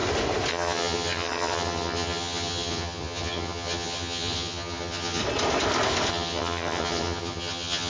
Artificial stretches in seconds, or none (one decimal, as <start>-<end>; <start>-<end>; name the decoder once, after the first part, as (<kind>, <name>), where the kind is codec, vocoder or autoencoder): 0.5-5.2 (vocoder, HiFi-GAN); 6.1-7.9